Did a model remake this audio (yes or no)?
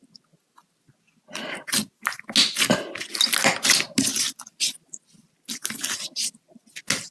no